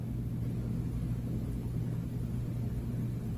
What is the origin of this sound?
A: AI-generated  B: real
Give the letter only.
B